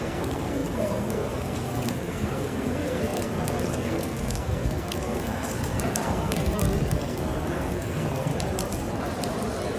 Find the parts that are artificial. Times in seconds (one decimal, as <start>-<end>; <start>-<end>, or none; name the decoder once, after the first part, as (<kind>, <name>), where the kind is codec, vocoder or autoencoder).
0.0-8.3 (codec, SNAC)

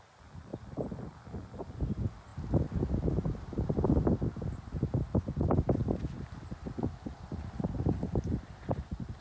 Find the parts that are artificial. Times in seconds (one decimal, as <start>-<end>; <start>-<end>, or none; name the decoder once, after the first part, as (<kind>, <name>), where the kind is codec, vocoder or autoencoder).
none

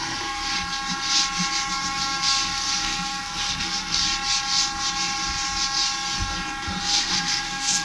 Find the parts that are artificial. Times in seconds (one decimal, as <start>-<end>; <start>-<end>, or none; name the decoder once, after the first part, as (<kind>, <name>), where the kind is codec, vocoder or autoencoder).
0.0-0.5 (codec, SNAC); 1.7-4.0; 6.8-7.8

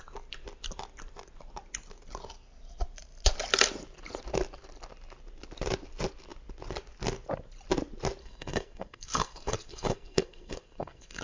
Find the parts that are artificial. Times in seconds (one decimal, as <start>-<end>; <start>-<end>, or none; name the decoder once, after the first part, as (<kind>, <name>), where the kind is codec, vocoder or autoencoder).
8.2-11.2 (codec, SNAC)